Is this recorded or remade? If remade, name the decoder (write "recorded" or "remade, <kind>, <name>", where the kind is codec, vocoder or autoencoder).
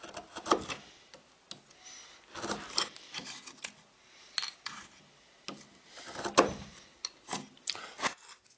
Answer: recorded